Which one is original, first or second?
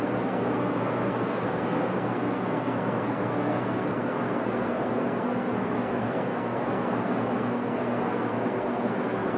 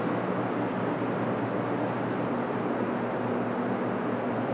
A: second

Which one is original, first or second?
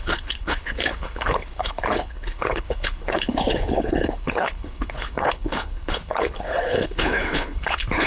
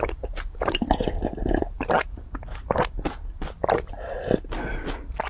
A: second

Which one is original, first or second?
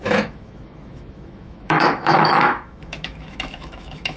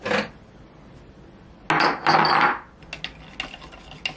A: second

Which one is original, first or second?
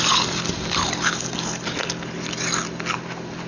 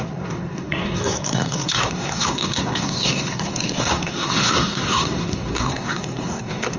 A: first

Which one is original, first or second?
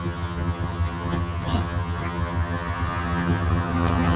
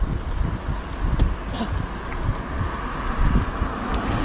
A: second